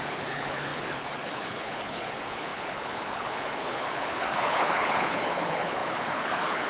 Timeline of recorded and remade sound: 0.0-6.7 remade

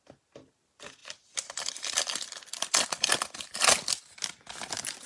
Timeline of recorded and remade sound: 0.0-5.1 recorded

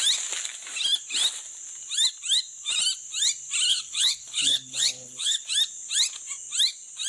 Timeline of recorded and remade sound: 0.0-3.7 recorded; 3.7-5.5 remade; 5.5-7.1 recorded

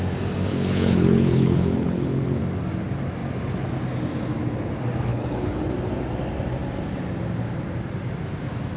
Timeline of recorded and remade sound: 0.0-0.5 recorded; 0.5-2.4 remade; 2.4-5.1 recorded; 5.1-5.7 remade; 5.7-8.8 recorded

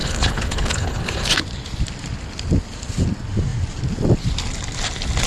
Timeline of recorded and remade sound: 0.0-1.0 remade; 1.0-5.3 recorded

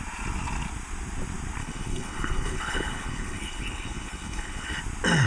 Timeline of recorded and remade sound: 0.0-1.6 recorded; 1.6-4.8 remade; 4.8-5.3 recorded